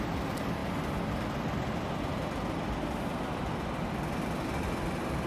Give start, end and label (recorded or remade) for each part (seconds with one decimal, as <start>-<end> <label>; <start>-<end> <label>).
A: 0.0-5.3 recorded